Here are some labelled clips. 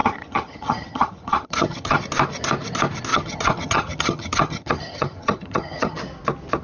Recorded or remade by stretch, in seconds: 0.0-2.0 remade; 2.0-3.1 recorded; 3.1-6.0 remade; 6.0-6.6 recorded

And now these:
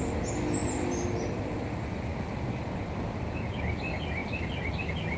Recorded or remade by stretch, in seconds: 0.0-5.2 recorded